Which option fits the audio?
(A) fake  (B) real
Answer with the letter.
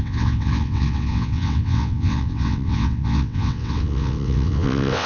A